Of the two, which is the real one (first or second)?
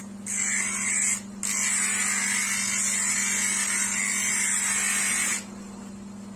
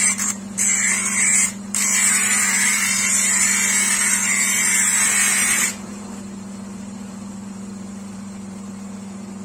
first